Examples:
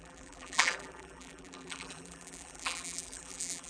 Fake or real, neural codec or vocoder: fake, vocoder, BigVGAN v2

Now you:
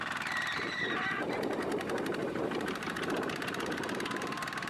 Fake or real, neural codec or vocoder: fake, vocoder, BigVGAN v2